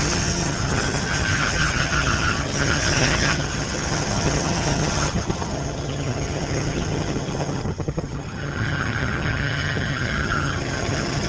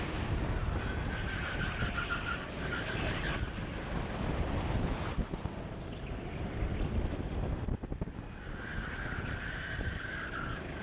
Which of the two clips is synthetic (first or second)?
first